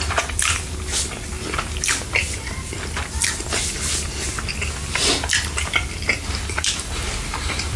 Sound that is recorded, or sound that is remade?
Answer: recorded